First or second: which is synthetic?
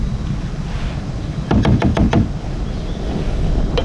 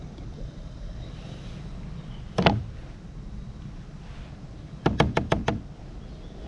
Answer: first